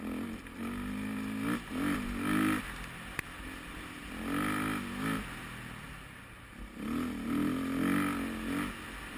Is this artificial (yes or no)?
no